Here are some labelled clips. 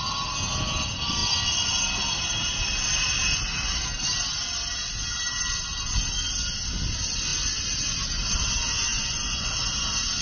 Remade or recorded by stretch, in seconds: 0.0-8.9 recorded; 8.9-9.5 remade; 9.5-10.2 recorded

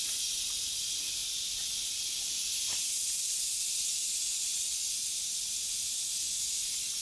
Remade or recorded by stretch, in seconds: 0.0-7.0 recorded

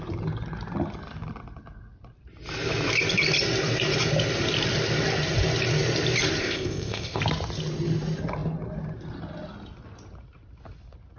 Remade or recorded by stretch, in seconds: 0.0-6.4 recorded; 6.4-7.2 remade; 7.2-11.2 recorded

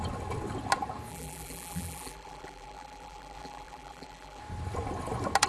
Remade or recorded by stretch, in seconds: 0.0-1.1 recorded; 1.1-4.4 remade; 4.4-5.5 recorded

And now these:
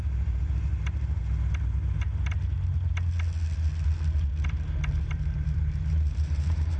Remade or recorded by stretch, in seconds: 0.0-1.2 remade; 1.2-5.0 recorded; 5.0-6.8 remade

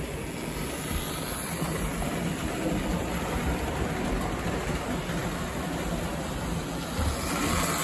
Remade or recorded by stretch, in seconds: 0.0-0.6 recorded; 0.6-3.0 remade; 3.0-7.8 recorded

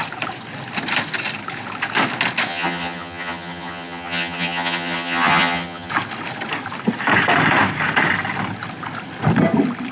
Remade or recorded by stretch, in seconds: 0.0-2.5 recorded; 2.5-5.9 remade; 5.9-9.9 recorded